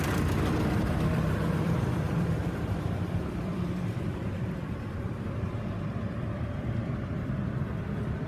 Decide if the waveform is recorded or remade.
remade